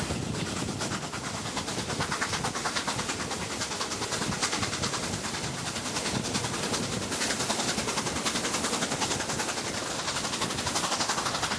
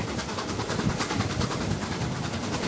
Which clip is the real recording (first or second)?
first